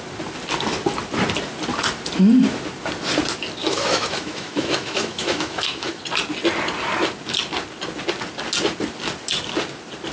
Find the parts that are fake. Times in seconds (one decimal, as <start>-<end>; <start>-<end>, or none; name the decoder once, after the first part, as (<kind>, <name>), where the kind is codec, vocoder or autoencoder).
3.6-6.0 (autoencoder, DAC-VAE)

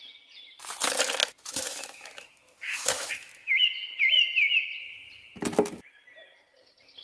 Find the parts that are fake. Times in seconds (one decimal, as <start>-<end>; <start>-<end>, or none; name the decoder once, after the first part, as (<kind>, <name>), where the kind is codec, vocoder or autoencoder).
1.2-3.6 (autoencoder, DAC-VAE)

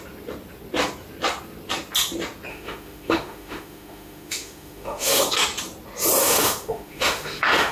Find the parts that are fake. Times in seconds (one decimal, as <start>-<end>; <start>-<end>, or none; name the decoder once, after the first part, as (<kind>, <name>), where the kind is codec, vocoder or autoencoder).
2.5-5.2 (autoencoder, DAC-VAE); 6.2-7.7

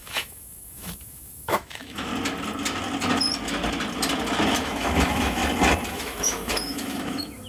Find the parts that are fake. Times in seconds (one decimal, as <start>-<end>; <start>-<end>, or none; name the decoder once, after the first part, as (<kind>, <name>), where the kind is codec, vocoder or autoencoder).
0.0-2.1 (autoencoder, DAC-VAE); 4.6-5.4; 5.9-7.5

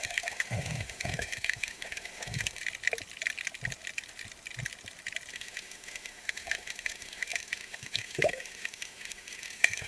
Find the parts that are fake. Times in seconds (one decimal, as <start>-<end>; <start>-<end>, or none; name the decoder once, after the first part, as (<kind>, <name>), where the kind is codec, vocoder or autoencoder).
0.0-2.6 (autoencoder, DAC-VAE); 5.3-9.9